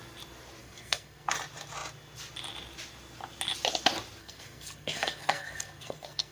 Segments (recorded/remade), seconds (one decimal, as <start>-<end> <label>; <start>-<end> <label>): 0.0-0.6 recorded; 0.6-1.3 remade; 1.3-4.2 recorded; 4.2-6.3 remade